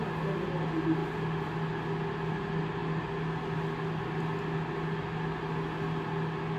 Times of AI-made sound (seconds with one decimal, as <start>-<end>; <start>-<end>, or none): none